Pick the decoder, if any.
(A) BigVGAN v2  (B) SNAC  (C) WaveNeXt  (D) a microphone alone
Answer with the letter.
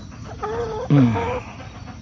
D